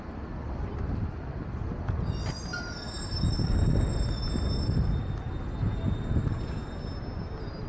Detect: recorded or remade recorded